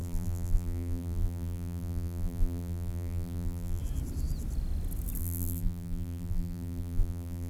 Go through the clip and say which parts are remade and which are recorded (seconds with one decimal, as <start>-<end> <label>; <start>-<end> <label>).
0.0-3.8 remade; 3.8-5.2 recorded; 5.2-7.5 remade